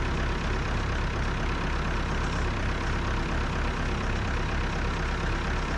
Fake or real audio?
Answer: real